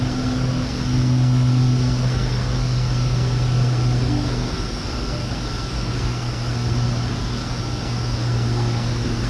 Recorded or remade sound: remade